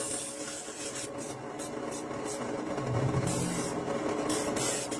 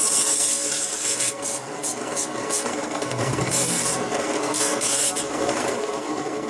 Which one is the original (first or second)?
first